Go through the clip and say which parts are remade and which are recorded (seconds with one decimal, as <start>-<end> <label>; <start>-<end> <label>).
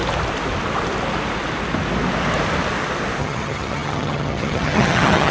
0.0-3.2 recorded; 3.2-5.3 remade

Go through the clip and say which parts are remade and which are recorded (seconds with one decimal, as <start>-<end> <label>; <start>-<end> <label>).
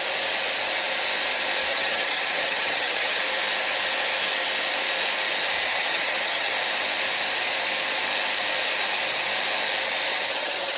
0.0-1.7 recorded; 1.7-3.2 remade; 3.2-5.7 recorded; 5.7-6.5 remade; 6.5-10.1 recorded; 10.1-10.8 remade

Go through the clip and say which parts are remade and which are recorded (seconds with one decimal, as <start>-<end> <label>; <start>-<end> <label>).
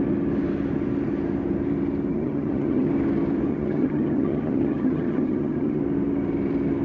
0.0-2.1 recorded; 2.1-2.9 remade; 2.9-3.5 recorded; 3.5-5.8 remade; 5.8-6.8 recorded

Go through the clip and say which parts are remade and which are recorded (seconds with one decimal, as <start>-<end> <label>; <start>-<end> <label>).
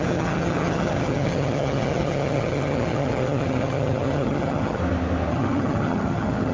0.0-4.8 remade; 4.8-5.3 recorded; 5.3-6.5 remade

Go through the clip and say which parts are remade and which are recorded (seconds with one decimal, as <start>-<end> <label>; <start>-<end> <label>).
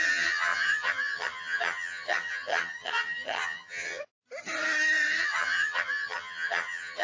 0.0-4.0 remade; 4.0-5.2 recorded; 5.2-7.0 remade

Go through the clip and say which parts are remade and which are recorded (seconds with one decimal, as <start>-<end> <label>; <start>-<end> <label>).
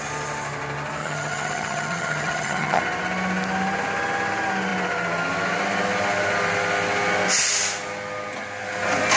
0.0-1.0 recorded; 1.0-2.8 remade; 2.8-9.2 recorded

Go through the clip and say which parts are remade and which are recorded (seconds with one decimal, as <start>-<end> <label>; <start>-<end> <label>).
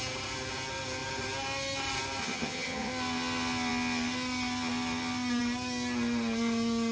0.0-2.2 recorded; 2.2-2.9 remade; 2.9-6.9 recorded